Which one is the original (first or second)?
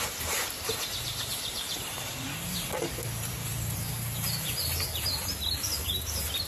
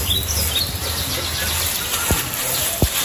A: second